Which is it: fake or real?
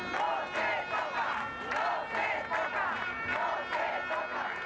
real